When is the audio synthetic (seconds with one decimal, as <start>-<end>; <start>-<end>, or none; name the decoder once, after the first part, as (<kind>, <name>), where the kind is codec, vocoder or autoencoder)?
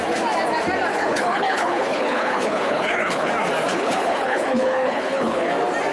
0.9-3.3 (codec, HILCodec); 3.7-5.5